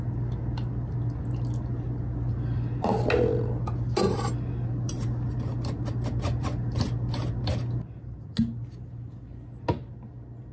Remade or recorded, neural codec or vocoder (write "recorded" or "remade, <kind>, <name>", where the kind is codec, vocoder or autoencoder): recorded